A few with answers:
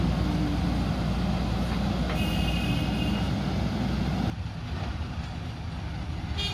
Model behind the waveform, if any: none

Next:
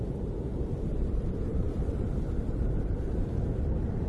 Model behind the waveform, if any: vocoder, BigVGAN v2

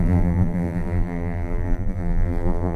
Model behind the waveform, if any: vocoder, BigVGAN v2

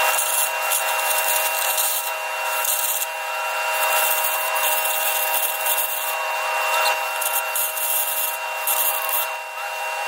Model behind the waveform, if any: none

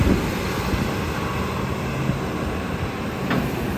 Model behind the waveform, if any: none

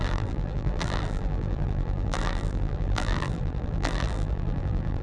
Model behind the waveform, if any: vocoder, BigVGAN v2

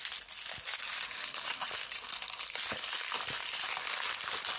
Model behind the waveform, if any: none